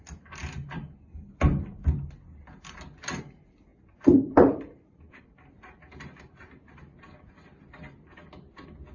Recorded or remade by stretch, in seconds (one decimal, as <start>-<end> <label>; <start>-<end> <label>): 0.0-3.7 recorded; 3.7-5.2 remade; 5.2-8.9 recorded